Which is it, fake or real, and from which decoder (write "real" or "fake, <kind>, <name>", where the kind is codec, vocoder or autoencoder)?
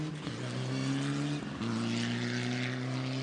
real